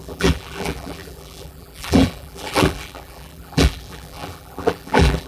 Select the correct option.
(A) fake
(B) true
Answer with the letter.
A